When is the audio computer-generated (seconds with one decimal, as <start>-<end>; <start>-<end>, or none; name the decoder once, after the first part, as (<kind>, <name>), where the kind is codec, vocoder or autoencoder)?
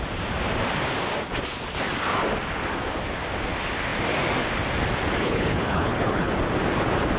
5.2-6.3 (codec, HILCodec)